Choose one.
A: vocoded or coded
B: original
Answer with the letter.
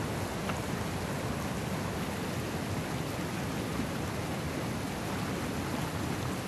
B